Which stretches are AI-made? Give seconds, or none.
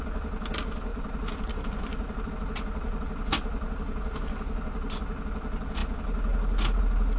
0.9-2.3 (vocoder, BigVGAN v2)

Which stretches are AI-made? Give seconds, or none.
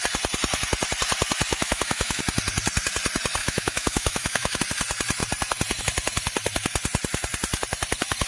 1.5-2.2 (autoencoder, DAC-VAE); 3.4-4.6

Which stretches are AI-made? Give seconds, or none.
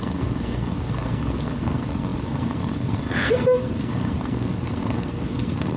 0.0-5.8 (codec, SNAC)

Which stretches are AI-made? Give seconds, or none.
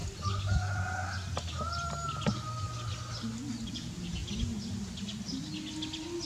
3.7-4.2 (vocoder, Vocos)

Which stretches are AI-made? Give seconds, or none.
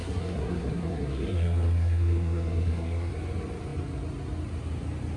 0.0-3.1 (codec, SNAC)